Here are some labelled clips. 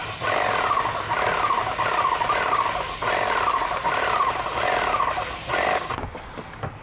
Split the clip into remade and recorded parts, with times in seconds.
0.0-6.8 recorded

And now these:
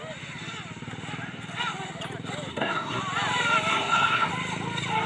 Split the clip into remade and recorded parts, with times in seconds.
0.0-2.5 recorded; 2.5-3.0 remade; 3.0-3.7 recorded; 3.7-4.3 remade; 4.3-5.1 recorded

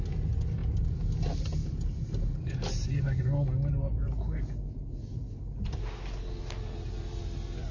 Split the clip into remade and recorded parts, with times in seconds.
0.0-7.7 recorded

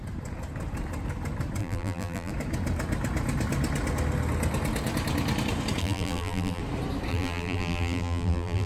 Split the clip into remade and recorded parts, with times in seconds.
0.0-1.6 recorded; 1.6-2.3 remade; 2.3-5.8 recorded; 5.8-6.6 remade; 6.6-7.1 recorded; 7.1-8.7 remade